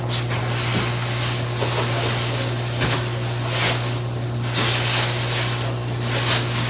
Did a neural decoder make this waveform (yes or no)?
no